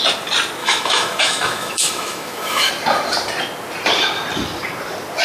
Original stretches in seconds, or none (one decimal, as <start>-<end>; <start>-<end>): 0.0-0.6; 2.7-5.2